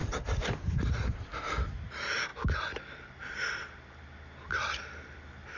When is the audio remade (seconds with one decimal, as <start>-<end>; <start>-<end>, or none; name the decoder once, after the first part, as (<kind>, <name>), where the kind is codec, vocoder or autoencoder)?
0.0-1.1 (vocoder, BigVGAN v2); 2.3-4.0